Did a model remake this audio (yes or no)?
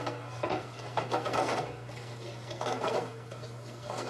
yes